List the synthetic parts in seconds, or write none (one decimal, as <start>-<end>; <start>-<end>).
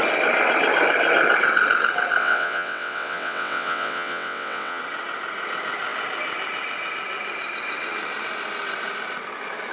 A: 2.2-4.8